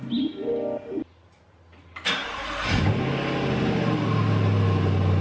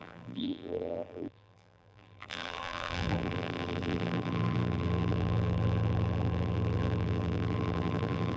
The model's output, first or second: second